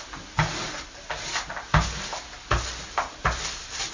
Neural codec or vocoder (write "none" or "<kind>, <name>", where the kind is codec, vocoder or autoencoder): none